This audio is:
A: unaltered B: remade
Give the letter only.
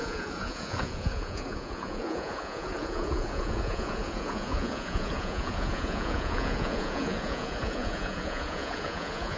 B